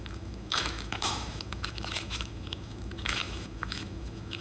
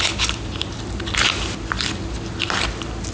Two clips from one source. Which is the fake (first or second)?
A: first